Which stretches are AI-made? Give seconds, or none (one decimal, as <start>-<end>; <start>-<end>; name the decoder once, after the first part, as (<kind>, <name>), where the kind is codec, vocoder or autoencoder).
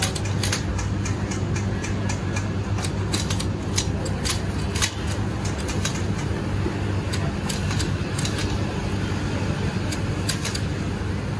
none